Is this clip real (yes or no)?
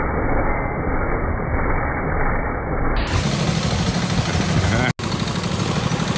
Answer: yes